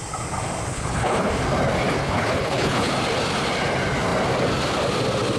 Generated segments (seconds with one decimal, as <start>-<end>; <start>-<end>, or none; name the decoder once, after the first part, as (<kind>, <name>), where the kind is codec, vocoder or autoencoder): 0.7-1.3 (codec, HILCodec); 2.0-2.9